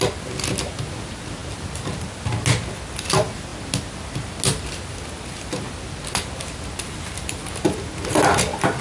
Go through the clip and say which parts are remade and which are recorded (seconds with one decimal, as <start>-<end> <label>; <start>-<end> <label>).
0.0-8.8 recorded